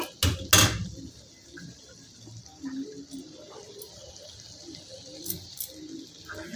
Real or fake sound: real